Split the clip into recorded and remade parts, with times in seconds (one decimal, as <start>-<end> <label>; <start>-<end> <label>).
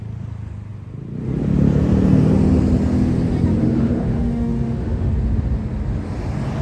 0.0-3.6 recorded; 3.6-5.1 remade; 5.1-6.6 recorded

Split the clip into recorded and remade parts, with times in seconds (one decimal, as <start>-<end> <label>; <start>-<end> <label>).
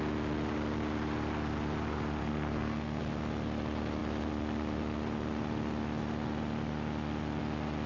0.0-2.2 recorded; 2.2-3.0 remade; 3.0-7.9 recorded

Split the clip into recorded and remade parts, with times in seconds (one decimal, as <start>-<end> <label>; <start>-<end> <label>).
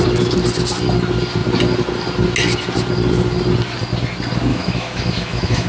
0.0-4.5 recorded; 4.5-5.7 remade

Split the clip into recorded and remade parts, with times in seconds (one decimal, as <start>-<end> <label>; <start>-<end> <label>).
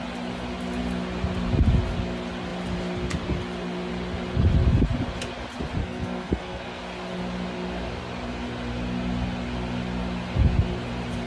0.0-5.8 recorded; 5.8-6.8 remade; 6.8-11.3 recorded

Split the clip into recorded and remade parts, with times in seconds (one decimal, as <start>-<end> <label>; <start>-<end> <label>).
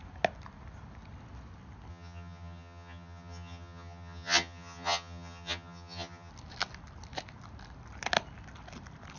0.0-1.9 recorded; 1.9-6.3 remade; 6.3-9.2 recorded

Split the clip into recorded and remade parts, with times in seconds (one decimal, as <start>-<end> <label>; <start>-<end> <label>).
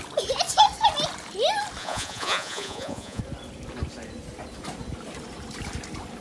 0.0-1.8 recorded; 1.8-3.2 remade; 3.2-6.2 recorded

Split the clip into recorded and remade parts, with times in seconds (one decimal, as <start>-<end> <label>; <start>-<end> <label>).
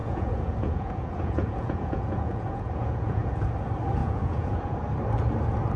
0.0-3.5 remade; 3.5-4.0 recorded; 4.0-4.8 remade; 4.8-5.8 recorded